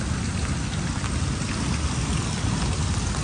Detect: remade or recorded recorded